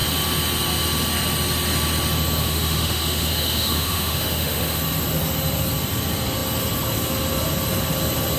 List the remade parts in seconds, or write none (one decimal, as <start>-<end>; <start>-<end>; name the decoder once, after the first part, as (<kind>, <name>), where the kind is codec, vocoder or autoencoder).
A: 2.4-4.8 (autoencoder, DAC-VAE)